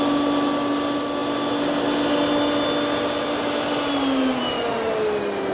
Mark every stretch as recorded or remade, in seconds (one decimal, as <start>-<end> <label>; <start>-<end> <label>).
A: 0.0-5.5 recorded